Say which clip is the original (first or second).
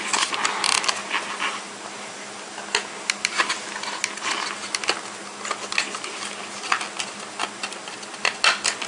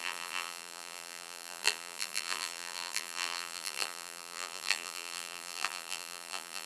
first